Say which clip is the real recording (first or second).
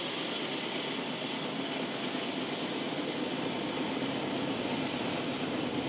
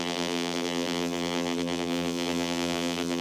first